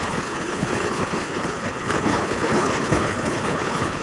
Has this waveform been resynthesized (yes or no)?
yes